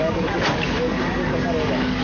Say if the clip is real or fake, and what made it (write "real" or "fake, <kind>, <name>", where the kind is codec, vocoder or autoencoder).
fake, codec, DAC